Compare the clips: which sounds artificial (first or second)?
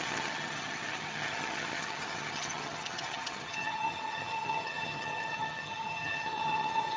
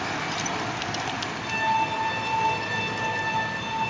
first